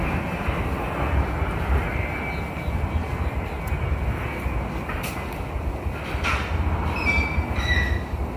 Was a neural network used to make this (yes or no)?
no